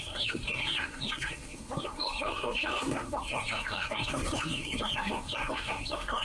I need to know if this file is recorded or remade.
remade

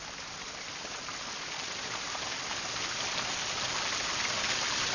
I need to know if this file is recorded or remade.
recorded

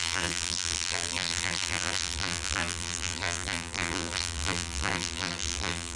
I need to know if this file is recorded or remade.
remade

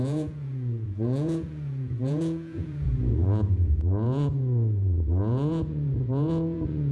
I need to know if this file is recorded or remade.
remade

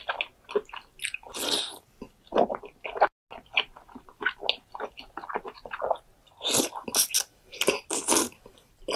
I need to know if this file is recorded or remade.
recorded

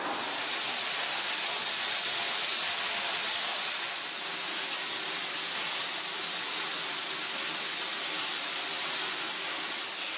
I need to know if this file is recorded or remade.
recorded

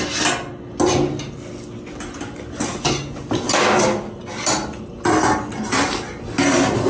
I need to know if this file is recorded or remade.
recorded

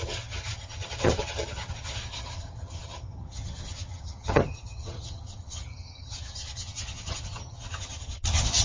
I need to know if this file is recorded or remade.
remade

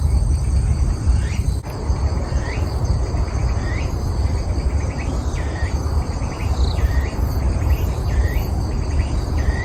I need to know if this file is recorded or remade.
remade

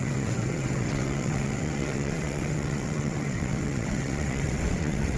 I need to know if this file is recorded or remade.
remade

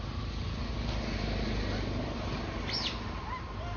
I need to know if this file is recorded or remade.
recorded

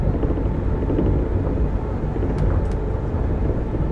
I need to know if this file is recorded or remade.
recorded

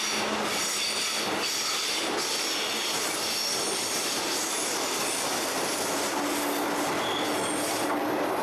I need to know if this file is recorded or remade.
recorded